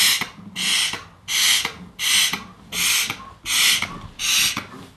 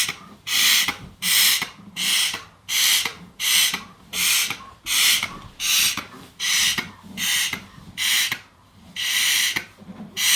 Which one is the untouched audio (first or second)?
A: first